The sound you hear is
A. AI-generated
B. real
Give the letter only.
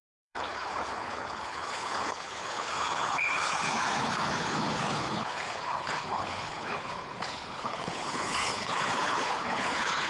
A